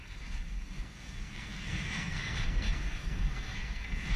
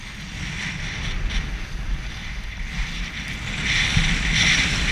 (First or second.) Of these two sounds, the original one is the second